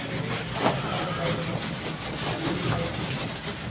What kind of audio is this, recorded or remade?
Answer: recorded